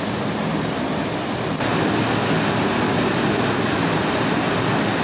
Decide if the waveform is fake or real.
real